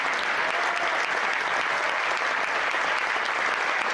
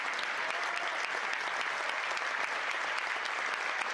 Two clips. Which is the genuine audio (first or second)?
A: first